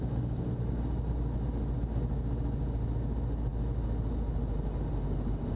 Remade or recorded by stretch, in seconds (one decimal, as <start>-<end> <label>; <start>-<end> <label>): 0.0-5.6 recorded